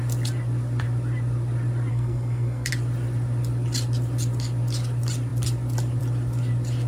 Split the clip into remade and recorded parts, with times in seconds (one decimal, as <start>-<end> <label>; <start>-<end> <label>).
0.0-1.9 recorded; 1.9-2.7 remade; 2.7-6.9 recorded